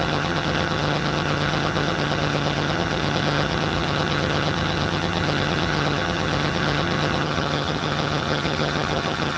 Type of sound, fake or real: fake